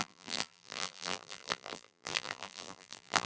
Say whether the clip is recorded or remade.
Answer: remade